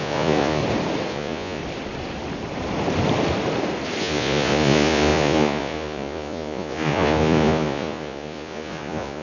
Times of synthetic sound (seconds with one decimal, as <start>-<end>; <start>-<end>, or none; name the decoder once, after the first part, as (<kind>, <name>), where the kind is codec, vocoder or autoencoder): 0.0-0.6 (vocoder, Vocos); 1.1-1.6; 4.0-9.2